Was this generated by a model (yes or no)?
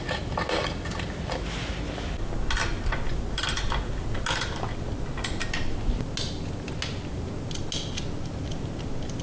no